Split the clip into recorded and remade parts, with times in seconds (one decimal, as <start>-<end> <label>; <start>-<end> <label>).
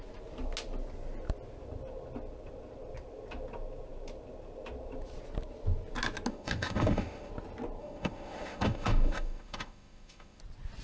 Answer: 0.0-6.3 recorded; 6.3-7.3 remade; 7.3-7.8 recorded; 7.8-10.4 remade; 10.4-10.8 recorded